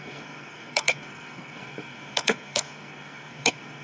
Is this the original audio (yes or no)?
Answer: no